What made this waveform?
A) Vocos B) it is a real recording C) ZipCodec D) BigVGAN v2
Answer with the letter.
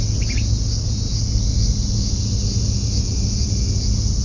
B